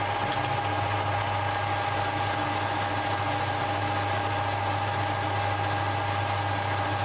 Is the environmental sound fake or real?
real